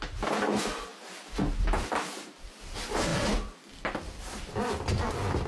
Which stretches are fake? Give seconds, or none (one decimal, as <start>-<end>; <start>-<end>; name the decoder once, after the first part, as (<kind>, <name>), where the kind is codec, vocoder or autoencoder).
none